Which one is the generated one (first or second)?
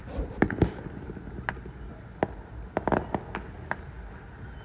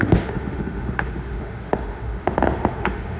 second